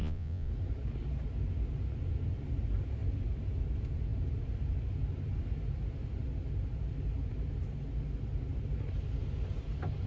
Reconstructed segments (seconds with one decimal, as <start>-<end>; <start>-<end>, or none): 0.0-0.5